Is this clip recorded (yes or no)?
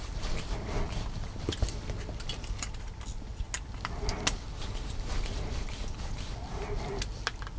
yes